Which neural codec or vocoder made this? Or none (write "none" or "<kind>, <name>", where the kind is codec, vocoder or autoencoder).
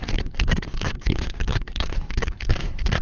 codec, SNAC